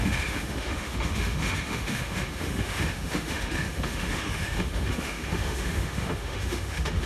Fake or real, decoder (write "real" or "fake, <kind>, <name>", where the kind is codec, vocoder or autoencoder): fake, autoencoder, DAC-VAE